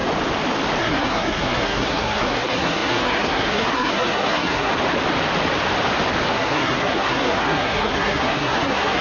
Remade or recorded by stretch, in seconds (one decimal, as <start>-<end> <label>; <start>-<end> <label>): 0.0-0.8 recorded; 0.8-4.7 remade; 4.7-6.3 recorded; 6.3-9.0 remade